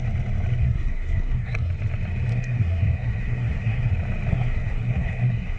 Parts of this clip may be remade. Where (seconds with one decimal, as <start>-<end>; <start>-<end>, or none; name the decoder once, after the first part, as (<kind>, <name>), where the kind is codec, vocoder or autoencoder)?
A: 0.6-1.7 (codec, SNAC); 2.3-3.9; 4.3-5.6